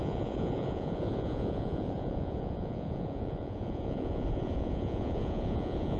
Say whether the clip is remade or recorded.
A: remade